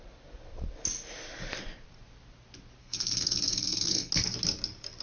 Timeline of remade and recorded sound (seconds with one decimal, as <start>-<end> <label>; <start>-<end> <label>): 0.0-2.8 recorded; 2.8-4.1 remade; 4.1-5.0 recorded